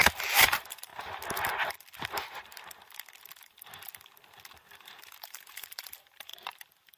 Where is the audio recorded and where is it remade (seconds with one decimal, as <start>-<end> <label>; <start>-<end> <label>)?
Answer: 0.0-0.9 remade; 0.9-4.7 recorded; 4.7-7.0 remade

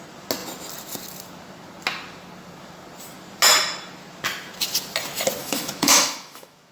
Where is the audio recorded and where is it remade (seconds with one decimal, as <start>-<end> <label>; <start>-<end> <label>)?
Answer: 0.0-5.4 recorded; 5.4-6.7 remade

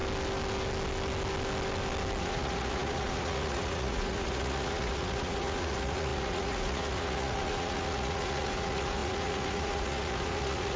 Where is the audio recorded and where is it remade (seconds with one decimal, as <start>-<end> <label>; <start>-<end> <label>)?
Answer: 0.0-2.2 recorded; 2.2-10.8 remade

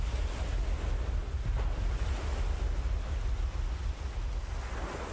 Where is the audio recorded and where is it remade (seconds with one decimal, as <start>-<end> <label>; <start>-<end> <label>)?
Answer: 0.0-5.1 recorded

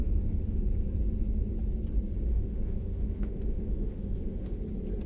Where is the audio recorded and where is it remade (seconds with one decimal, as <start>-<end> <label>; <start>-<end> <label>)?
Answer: 0.0-0.6 remade; 0.6-2.3 recorded; 2.3-4.6 remade; 4.6-5.1 recorded

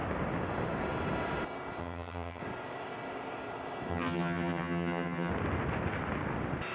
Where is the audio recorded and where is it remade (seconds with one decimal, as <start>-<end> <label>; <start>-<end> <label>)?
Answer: 0.0-1.8 recorded; 1.8-2.4 remade; 2.4-3.9 recorded; 3.9-5.3 remade; 5.3-6.7 recorded